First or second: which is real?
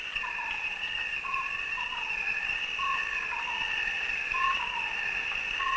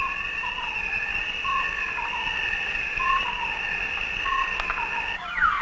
second